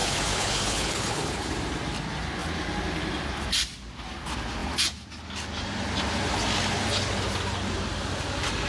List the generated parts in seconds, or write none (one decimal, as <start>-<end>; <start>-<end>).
0.0-1.5